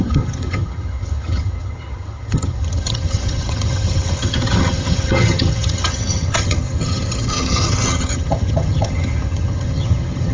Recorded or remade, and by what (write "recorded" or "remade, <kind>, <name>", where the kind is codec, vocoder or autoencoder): remade, vocoder, HiFi-GAN